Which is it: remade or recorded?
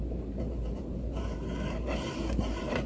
remade